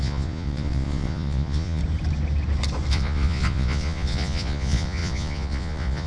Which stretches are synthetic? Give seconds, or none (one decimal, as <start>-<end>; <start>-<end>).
0.0-1.8; 2.9-6.1